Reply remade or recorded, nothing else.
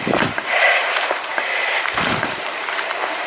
remade